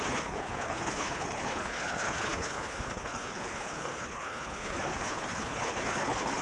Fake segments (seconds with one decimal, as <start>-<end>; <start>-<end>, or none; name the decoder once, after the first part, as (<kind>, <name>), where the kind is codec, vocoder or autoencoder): 0.0-6.4 (codec, HILCodec)